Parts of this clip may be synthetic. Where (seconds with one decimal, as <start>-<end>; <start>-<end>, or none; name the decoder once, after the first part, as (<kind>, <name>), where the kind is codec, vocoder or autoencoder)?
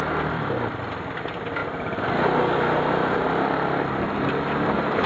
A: 0.0-1.6 (vocoder, BigVGAN v2)